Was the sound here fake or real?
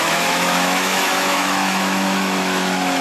fake